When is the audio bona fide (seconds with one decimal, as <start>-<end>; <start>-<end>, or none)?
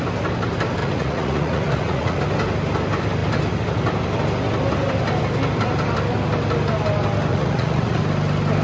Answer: 0.0-0.8; 2.2-7.3; 8.0-8.6